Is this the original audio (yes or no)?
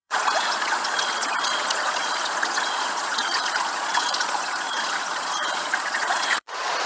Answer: no